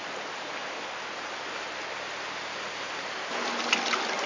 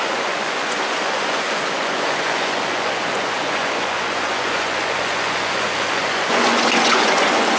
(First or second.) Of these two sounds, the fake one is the second